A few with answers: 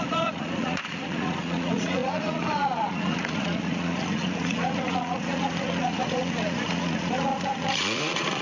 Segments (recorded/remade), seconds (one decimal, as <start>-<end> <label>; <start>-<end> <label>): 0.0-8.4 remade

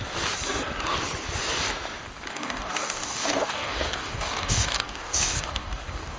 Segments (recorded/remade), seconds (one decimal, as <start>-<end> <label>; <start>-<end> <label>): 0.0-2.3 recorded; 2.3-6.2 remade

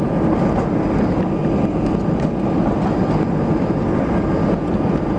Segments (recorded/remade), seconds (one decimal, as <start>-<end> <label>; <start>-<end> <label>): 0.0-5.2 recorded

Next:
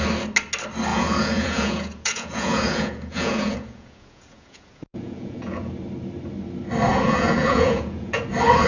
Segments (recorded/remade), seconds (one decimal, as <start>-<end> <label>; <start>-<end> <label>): 0.0-0.9 recorded; 0.9-5.7 remade; 5.7-6.9 recorded; 6.9-8.2 remade; 8.2-8.7 recorded